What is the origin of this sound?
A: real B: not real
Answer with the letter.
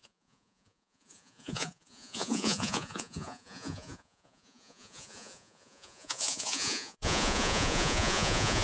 B